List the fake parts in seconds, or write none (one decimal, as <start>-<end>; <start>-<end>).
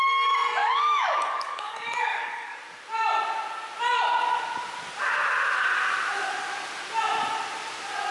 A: 0.6-2.6